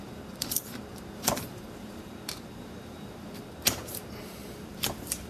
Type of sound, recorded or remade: remade